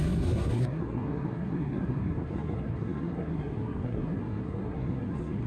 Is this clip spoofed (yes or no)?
yes